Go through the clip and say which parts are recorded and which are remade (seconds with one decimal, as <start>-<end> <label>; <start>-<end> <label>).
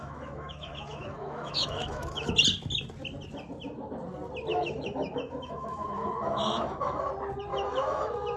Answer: 0.0-2.3 remade; 2.3-4.5 recorded; 4.5-7.1 remade; 7.1-7.5 recorded; 7.5-8.4 remade